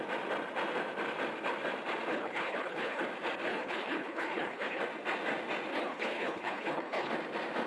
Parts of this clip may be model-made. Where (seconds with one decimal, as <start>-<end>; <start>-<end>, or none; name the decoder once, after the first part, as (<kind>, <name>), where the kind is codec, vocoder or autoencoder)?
2.1-3.0 (codec, HILCodec); 3.5-4.8; 5.7-7.1